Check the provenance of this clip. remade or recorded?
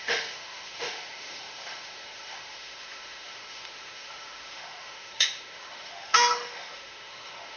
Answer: remade